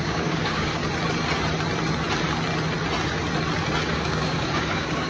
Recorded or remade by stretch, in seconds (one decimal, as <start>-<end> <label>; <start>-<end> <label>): 0.0-0.8 remade; 0.8-3.9 recorded; 3.9-5.1 remade